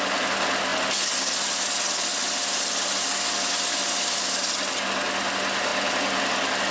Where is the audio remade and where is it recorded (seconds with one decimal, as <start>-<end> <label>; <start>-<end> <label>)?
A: 0.0-6.7 recorded